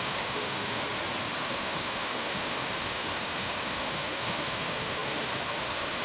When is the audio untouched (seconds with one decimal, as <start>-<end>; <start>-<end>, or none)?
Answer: 0.8-1.4